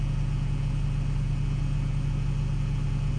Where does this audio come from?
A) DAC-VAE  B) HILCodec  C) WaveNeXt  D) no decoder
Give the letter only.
D